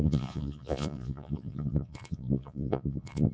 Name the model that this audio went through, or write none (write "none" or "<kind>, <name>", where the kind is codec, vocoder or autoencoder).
vocoder, Vocos